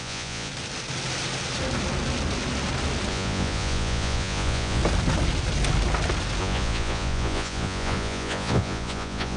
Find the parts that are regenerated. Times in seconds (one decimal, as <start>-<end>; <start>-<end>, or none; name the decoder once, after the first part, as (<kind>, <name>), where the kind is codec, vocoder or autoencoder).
0.0-0.5 (vocoder, Vocos); 3.1-4.8; 6.4-9.4